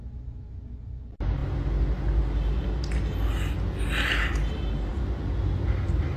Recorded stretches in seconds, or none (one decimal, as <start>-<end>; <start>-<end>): 0.0-6.2